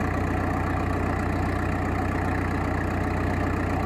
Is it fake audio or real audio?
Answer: real